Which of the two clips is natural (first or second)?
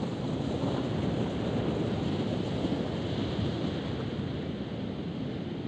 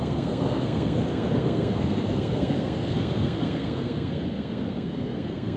first